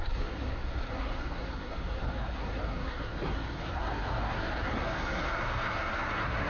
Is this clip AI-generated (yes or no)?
yes